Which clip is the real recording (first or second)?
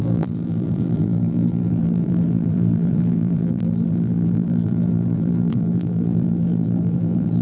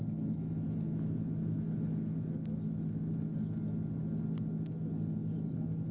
second